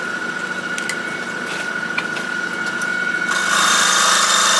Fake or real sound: real